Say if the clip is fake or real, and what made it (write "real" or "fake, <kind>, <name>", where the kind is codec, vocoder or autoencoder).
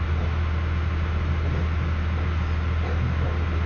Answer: real